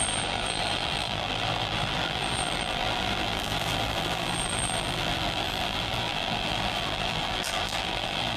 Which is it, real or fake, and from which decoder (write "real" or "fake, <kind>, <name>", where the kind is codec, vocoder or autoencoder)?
fake, vocoder, BigVGAN v2